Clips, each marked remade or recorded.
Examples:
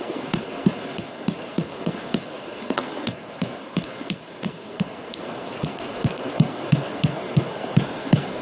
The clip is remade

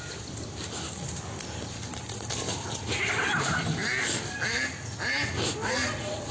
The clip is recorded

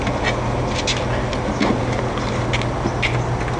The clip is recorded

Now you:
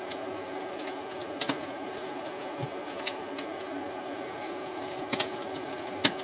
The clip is recorded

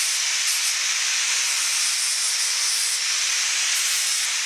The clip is recorded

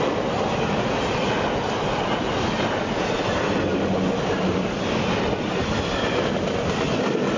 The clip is recorded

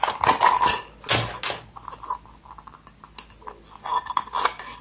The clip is recorded